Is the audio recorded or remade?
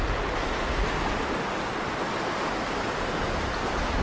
recorded